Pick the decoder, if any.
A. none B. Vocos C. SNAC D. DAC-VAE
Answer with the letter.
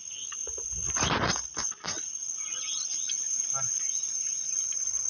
A